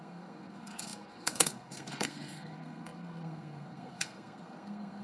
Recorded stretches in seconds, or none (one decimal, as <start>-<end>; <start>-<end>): none